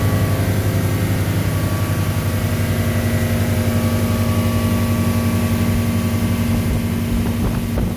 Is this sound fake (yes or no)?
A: no